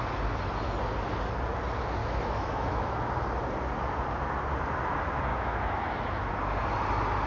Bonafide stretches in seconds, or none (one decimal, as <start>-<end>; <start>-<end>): 0.0-2.0; 3.1-5.3; 6.3-7.3